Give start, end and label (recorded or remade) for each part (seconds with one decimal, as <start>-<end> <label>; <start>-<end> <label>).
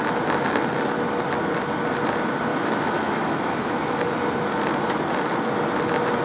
0.0-2.5 recorded; 2.5-4.0 remade; 4.0-6.2 recorded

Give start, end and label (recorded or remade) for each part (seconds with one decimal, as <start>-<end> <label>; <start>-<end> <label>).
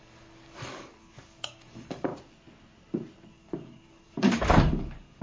0.0-2.1 remade; 2.1-3.3 recorded; 3.3-5.2 remade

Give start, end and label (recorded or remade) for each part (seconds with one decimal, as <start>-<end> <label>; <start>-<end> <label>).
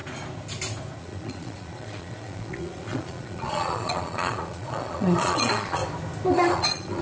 0.0-1.0 recorded; 1.0-5.8 remade; 5.8-6.3 recorded; 6.3-7.0 remade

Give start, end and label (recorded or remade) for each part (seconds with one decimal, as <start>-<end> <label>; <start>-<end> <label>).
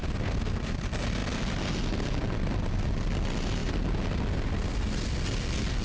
0.0-5.8 recorded